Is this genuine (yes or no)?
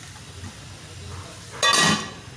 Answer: yes